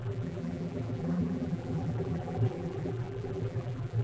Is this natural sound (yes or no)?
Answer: no